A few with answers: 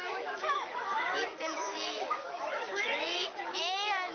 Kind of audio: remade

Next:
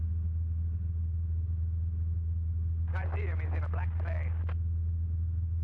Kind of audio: recorded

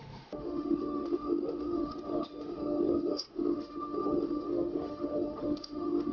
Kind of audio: remade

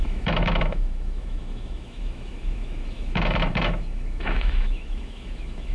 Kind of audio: remade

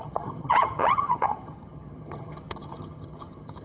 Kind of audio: remade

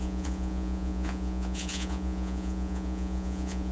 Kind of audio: remade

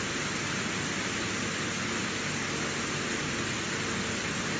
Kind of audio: recorded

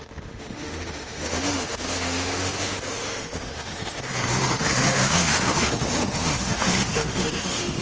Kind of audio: remade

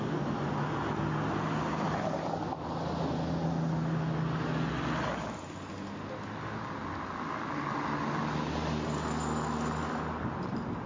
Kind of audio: recorded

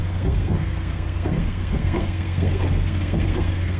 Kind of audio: remade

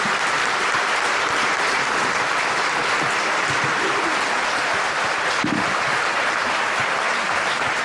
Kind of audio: remade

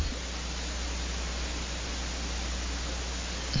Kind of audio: recorded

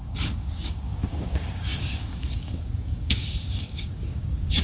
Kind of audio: remade